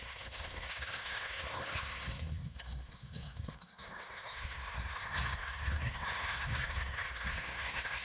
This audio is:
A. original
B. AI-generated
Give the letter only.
B